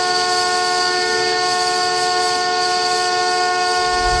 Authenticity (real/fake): real